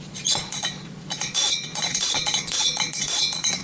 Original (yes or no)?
no